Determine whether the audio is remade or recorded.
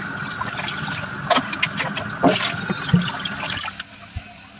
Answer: recorded